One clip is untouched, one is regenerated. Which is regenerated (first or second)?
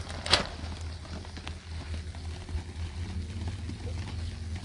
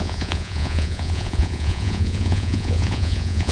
second